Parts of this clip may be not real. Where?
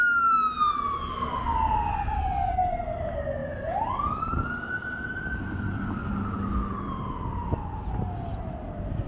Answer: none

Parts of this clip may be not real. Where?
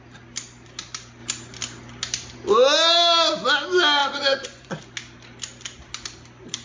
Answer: 4.0-4.8 (vocoder, Vocos)